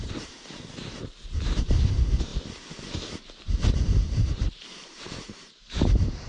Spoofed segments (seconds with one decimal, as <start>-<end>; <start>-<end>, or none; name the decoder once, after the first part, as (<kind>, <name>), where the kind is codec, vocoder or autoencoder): 0.0-2.3 (vocoder, BigVGAN v2); 3.6-6.3